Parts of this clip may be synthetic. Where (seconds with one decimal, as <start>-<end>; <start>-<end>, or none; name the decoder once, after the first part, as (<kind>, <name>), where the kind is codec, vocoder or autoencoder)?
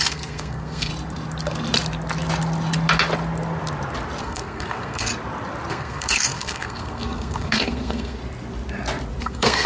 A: 0.0-0.9 (codec, SNAC); 4.2-5.1; 5.7-8.2; 9.2-9.7